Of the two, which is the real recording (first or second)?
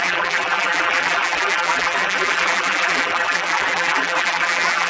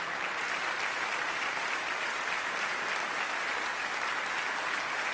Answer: second